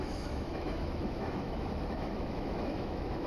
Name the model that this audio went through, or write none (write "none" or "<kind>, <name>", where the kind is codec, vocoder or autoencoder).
autoencoder, DAC-VAE